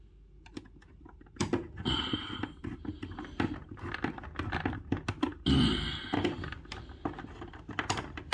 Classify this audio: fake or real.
real